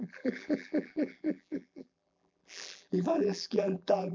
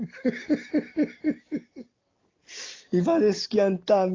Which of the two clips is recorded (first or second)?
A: second